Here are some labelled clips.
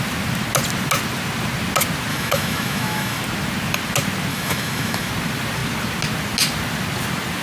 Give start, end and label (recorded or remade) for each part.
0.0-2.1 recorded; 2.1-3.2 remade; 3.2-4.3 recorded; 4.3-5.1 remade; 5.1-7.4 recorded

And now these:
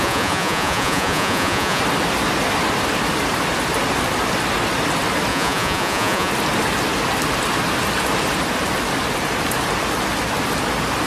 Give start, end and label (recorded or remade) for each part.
0.0-1.8 remade; 1.8-5.3 recorded; 5.3-6.3 remade; 6.3-11.1 recorded

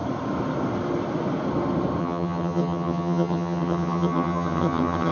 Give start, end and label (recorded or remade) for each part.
0.0-2.0 recorded; 2.0-5.1 remade

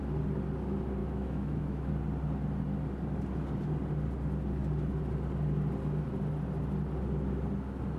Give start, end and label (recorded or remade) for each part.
0.0-1.0 recorded; 1.0-1.9 remade; 1.9-8.0 recorded

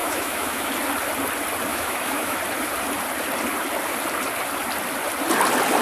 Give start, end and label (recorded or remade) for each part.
0.0-0.7 remade; 0.7-1.7 recorded; 1.7-2.4 remade; 2.4-5.8 recorded